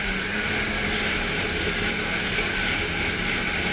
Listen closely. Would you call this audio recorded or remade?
recorded